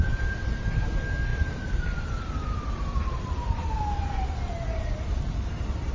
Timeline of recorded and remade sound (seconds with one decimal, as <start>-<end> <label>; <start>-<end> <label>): 0.0-3.6 remade; 3.6-4.4 recorded; 4.4-5.9 remade